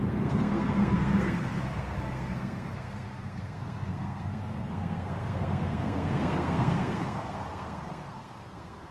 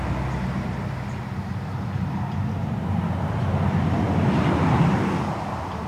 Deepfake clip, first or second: first